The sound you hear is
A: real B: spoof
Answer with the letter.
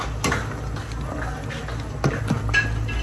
A